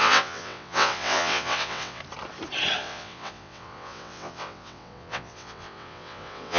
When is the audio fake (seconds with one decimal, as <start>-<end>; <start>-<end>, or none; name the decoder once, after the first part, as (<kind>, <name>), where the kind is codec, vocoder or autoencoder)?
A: 0.0-2.0 (vocoder, WaveNeXt); 2.8-6.6